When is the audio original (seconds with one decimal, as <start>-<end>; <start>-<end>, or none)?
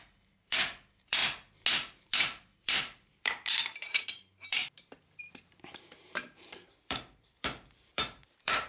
1.2-2.0